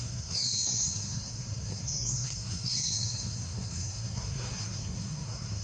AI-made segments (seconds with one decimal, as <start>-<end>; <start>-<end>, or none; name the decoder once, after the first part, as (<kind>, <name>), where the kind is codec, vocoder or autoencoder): 0.0-5.6 (codec, SNAC)